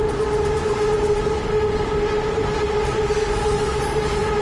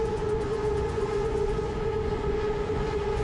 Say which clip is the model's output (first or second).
second